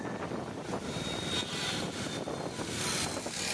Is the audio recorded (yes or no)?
yes